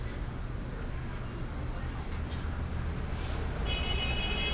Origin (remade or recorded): recorded